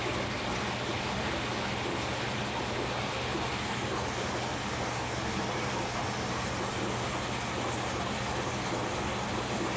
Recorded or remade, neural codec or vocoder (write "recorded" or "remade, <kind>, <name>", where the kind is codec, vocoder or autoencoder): recorded